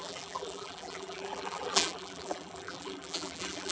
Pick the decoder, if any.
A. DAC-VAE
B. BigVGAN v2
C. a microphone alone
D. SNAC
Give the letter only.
B